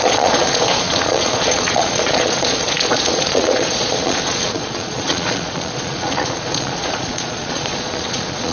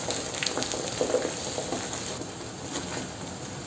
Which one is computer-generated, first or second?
first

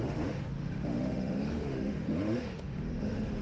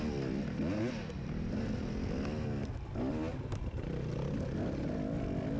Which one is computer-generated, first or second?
first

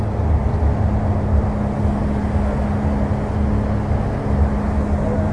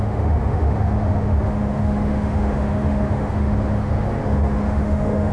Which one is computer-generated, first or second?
second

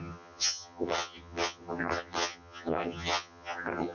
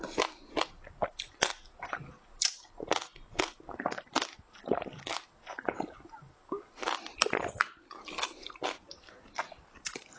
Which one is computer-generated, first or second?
first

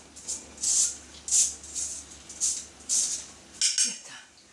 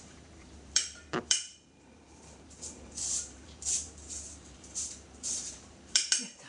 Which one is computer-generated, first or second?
second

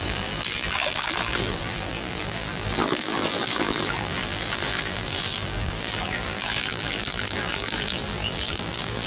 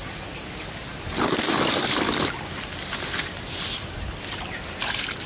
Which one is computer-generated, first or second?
first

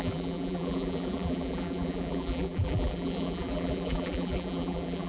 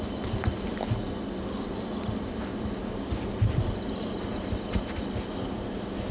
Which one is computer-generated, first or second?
first